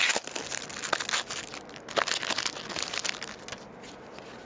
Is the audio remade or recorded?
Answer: recorded